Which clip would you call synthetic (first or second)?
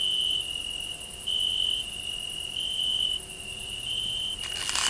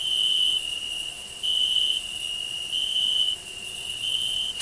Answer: second